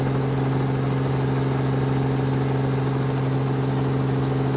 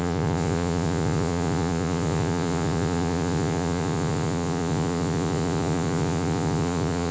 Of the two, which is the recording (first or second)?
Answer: first